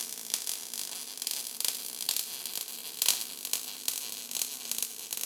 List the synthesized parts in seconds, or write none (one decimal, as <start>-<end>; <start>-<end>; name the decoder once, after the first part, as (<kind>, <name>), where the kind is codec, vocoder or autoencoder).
none